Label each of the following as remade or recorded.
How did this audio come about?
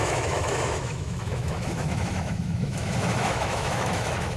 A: remade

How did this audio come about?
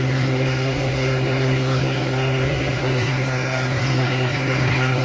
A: remade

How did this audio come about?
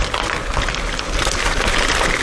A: recorded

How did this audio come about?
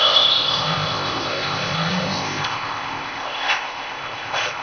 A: remade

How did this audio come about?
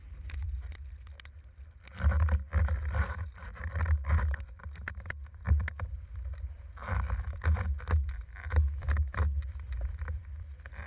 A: recorded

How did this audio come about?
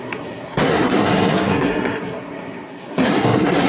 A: remade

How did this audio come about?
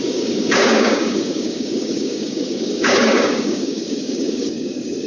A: remade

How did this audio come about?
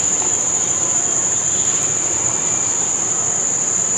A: remade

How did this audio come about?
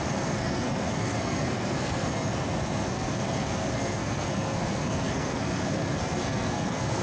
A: remade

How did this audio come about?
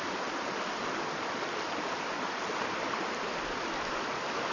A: recorded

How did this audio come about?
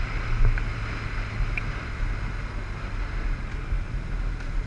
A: recorded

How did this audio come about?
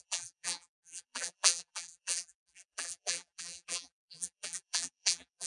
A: remade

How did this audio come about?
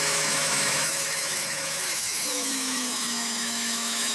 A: remade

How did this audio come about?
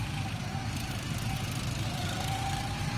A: recorded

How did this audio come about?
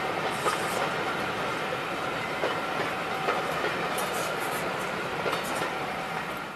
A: recorded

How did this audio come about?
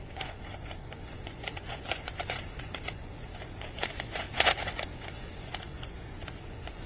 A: remade